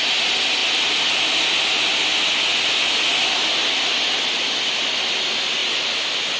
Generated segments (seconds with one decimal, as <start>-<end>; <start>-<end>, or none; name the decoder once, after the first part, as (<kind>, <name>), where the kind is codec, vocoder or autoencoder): none